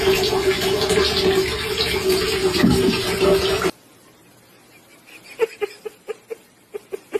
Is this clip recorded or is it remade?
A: recorded